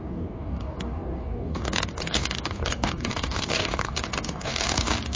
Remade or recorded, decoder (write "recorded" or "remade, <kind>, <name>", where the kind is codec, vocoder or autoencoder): remade, codec, DAC